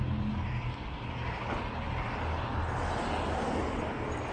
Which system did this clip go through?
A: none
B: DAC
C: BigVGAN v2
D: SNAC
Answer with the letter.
A